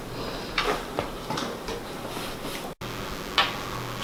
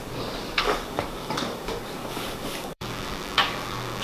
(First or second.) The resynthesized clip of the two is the second